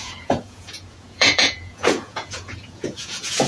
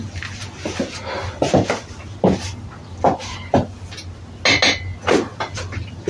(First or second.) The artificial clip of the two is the first